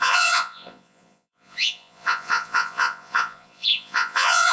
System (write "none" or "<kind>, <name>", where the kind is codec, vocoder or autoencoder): vocoder, Vocos